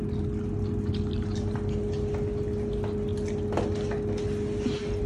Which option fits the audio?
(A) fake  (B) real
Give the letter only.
B